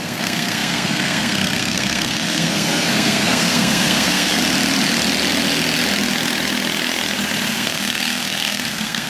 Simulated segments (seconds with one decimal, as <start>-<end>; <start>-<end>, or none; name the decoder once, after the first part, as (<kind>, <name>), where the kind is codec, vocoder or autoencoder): 0.0-4.4 (codec, SNAC); 7.5-9.1